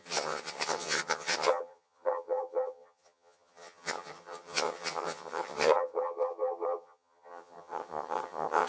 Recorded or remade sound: remade